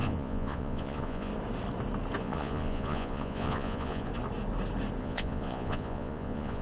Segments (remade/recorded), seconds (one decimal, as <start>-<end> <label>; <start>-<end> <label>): 0.0-1.3 remade; 1.3-2.2 recorded; 2.2-4.1 remade; 4.1-5.0 recorded; 5.0-6.6 remade